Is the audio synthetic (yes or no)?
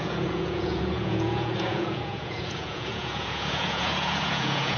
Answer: yes